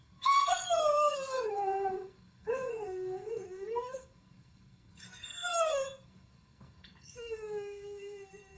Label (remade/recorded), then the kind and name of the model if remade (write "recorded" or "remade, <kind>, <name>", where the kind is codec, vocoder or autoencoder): remade, codec, SNAC